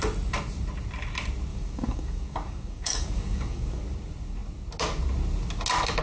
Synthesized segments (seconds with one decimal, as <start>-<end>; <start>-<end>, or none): 1.5-3.8